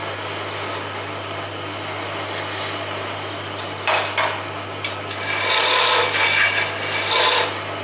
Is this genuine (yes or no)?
yes